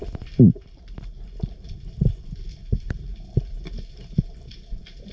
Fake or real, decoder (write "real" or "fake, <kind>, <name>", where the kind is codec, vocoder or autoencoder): real